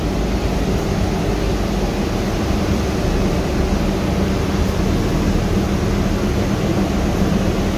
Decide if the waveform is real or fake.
real